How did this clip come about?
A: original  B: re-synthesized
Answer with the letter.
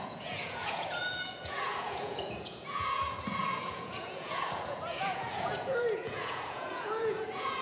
B